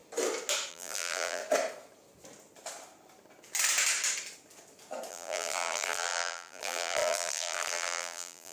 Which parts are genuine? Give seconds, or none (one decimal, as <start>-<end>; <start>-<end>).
0.0-0.7; 1.4-5.1